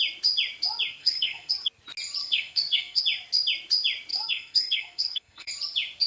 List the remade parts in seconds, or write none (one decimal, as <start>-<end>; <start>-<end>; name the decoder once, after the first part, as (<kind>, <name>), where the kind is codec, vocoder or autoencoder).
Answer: 1.0-1.5 (codec, SNAC); 2.2-3.0; 4.1-5.5